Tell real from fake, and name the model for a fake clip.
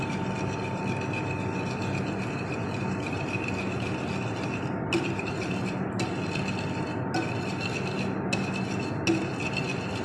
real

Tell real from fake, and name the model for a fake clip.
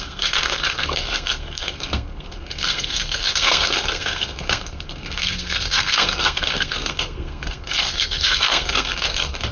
fake, codec, SNAC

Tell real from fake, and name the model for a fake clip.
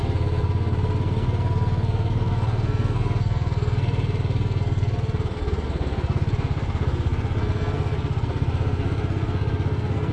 fake, codec, SNAC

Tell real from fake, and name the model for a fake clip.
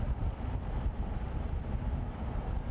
real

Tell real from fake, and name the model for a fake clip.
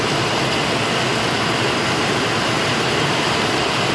real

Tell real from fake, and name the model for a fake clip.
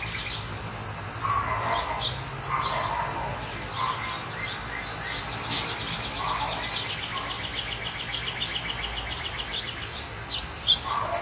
real